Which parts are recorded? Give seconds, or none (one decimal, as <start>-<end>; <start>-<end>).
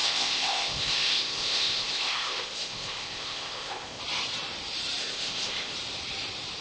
4.0-5.0; 5.7-6.6